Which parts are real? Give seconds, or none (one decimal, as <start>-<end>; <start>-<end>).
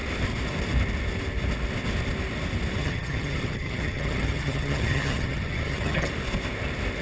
0.0-2.8; 6.1-7.0